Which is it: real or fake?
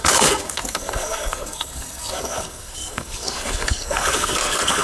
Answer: fake